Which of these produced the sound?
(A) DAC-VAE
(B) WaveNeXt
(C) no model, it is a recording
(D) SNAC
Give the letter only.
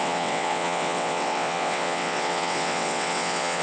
B